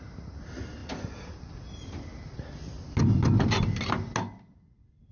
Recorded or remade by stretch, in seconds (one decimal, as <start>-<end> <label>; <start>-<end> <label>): 0.0-5.1 recorded